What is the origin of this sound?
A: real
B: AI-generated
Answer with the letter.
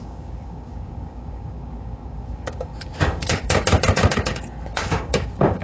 B